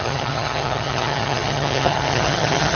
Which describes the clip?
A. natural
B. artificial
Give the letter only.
B